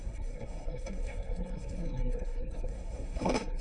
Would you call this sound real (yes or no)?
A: no